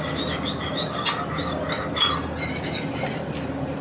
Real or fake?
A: real